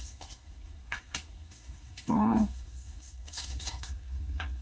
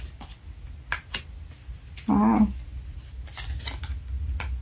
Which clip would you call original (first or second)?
second